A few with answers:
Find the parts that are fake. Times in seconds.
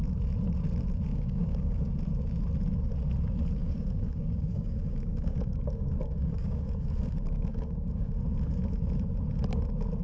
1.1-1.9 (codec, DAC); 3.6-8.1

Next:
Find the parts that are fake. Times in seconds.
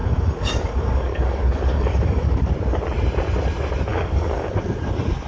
0.0-2.5 (codec, DAC); 3.9-4.5